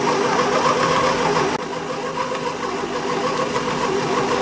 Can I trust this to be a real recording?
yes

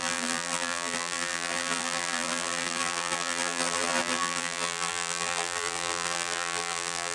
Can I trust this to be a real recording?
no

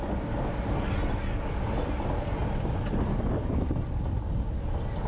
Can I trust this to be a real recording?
yes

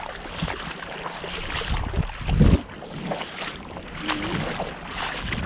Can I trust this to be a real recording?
yes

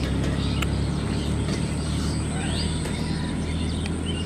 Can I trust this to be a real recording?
yes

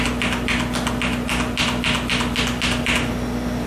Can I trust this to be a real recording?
yes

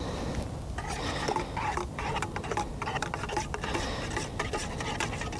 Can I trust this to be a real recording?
yes